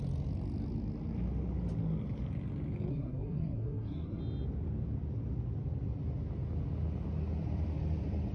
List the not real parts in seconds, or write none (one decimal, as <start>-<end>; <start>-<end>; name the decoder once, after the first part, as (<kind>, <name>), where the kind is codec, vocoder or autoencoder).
2.9-4.2 (codec, SNAC)